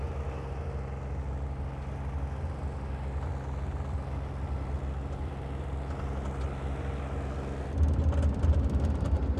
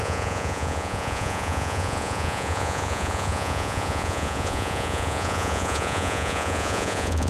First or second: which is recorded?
first